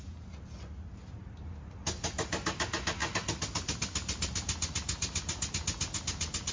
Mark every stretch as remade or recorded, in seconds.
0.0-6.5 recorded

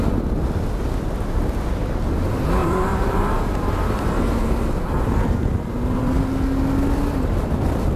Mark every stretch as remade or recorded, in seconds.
0.0-2.6 recorded; 2.6-6.2 remade; 6.2-8.0 recorded